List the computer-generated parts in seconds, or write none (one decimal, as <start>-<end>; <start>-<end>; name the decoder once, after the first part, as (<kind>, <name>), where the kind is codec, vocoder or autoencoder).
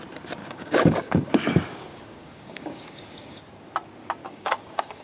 0.4-3.4 (codec, DAC); 4.2-5.0